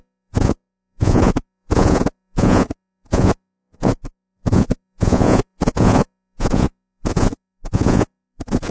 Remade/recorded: remade